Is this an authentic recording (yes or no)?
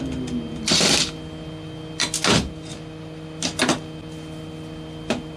yes